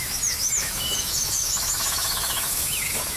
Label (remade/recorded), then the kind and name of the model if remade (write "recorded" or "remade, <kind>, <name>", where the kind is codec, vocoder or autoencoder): remade, autoencoder, DAC-VAE